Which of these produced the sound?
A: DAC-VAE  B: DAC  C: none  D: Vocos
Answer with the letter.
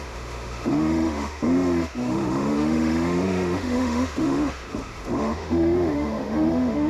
A